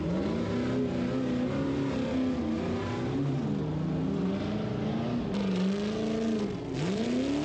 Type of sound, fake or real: real